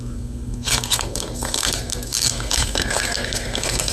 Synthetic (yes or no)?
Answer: yes